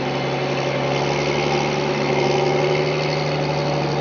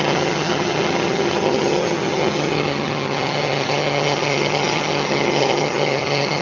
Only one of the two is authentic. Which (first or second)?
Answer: first